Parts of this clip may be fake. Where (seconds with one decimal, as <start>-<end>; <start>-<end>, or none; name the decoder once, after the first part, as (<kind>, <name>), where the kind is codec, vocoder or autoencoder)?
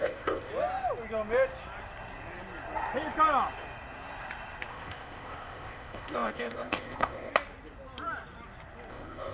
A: 0.0-0.5 (codec, ZipCodec); 4.7-7.3; 8.9-9.3